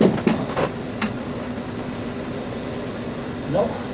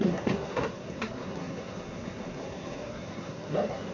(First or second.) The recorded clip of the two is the first